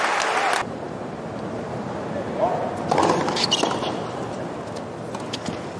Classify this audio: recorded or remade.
recorded